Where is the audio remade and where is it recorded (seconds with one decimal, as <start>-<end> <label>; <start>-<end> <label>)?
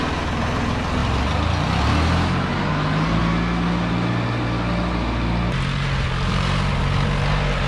0.0-7.7 recorded